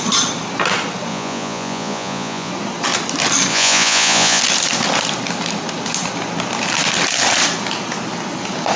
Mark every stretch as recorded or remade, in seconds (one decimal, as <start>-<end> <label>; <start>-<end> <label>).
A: 0.0-1.1 recorded; 1.1-2.5 remade; 2.5-3.5 recorded; 3.5-4.4 remade; 4.4-8.8 recorded